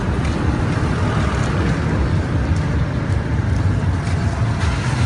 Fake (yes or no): no